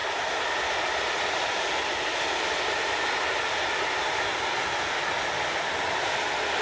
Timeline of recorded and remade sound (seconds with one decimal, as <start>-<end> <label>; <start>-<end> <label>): 0.0-6.6 recorded